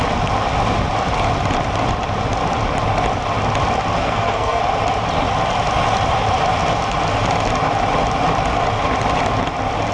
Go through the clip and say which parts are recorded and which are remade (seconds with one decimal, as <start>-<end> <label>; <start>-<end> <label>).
0.0-4.0 recorded; 4.0-4.6 remade; 4.6-9.9 recorded